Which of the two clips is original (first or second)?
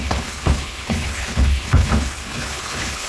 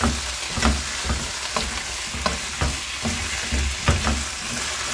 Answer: second